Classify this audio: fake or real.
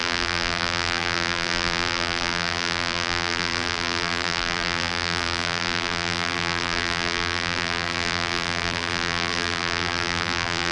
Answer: fake